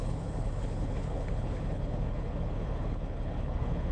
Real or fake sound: fake